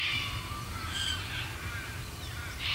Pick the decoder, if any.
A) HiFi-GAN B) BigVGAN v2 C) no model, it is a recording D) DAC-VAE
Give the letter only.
C